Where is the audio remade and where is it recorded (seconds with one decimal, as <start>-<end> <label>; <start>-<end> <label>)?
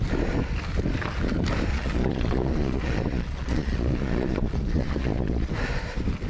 0.0-1.7 recorded; 1.7-5.5 remade; 5.5-6.3 recorded